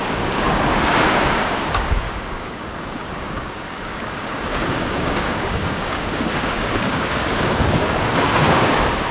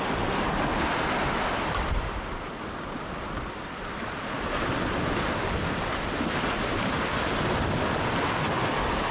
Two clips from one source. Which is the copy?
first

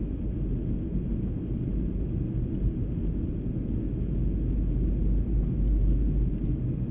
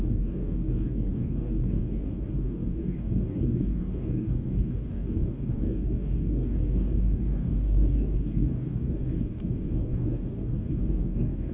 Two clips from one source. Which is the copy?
second